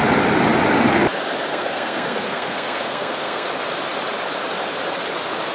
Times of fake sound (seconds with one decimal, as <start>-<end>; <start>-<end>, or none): 1.5-3.5